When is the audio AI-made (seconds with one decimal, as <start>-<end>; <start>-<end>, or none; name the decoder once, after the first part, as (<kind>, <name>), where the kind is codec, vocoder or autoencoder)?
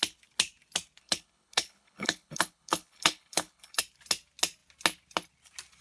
1.0-3.8 (codec, HILCodec)